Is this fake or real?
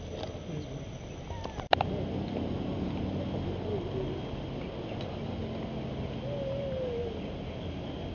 real